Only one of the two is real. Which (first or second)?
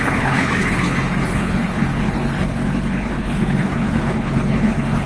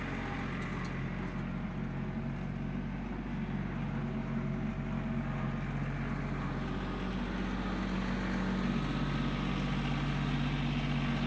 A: second